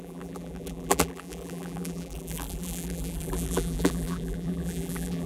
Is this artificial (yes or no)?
yes